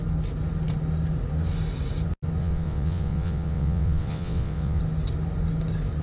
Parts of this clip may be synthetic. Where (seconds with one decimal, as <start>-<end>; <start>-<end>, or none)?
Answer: 2.4-4.8